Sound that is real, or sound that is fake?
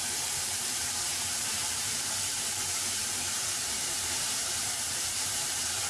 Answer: fake